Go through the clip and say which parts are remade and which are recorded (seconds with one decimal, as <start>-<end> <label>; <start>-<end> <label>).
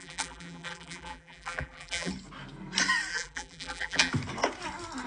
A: 0.0-2.1 remade; 2.1-3.1 recorded; 3.1-4.1 remade; 4.1-5.1 recorded